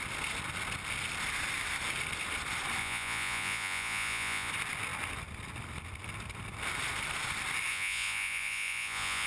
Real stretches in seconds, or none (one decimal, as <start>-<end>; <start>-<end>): 0.0-2.8; 4.5-7.7